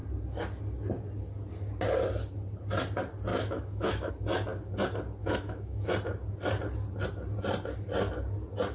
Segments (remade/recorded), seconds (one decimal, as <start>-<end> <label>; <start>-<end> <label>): 0.0-3.3 recorded; 3.3-4.1 remade; 4.1-5.2 recorded; 5.2-5.9 remade; 5.9-8.7 recorded